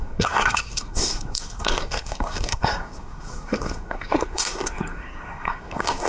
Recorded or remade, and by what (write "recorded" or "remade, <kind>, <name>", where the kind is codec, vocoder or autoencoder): remade, codec, SNAC